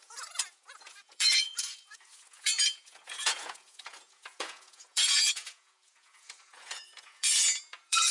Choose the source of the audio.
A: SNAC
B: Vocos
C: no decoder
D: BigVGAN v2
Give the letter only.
B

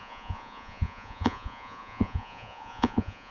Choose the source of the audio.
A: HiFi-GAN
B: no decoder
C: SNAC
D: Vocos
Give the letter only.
D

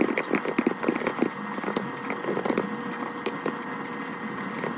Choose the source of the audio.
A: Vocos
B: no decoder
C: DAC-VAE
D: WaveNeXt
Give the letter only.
B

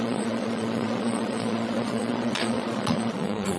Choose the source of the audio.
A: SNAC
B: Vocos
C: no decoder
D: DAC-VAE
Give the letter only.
B